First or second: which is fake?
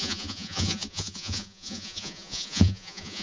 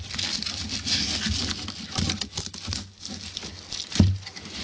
first